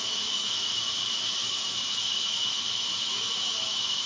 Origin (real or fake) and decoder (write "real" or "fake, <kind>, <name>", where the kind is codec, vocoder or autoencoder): fake, autoencoder, DAC-VAE